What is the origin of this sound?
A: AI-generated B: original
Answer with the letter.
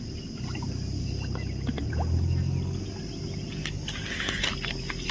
B